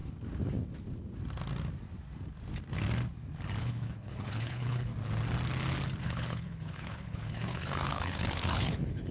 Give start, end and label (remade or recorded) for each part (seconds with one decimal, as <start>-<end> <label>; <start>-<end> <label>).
0.0-3.6 recorded; 3.6-4.9 remade; 4.9-6.0 recorded; 6.0-9.1 remade